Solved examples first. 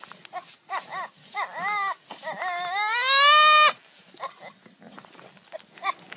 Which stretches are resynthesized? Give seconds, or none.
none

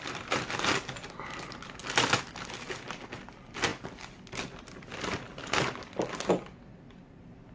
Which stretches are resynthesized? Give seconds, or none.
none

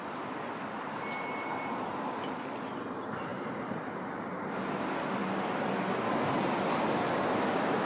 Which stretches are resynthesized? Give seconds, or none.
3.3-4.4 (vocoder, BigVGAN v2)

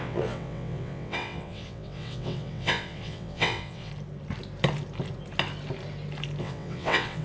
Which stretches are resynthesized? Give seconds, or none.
0.0-3.9 (vocoder, WaveNeXt); 6.4-7.2

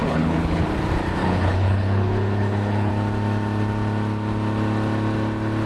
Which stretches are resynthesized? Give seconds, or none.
0.0-0.7 (codec, HILCodec); 1.2-2.9

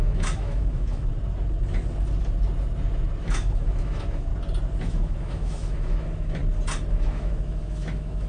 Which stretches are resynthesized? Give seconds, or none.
0.0-1.1 (autoencoder, DAC-VAE); 3.2-4.3; 4.8-6.4; 6.9-8.3

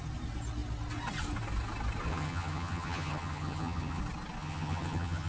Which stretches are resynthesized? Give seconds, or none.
2.1-4.0 (vocoder, HiFi-GAN); 4.4-5.3

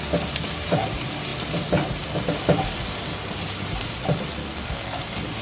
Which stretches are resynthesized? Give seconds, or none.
4.4-5.0 (codec, SNAC)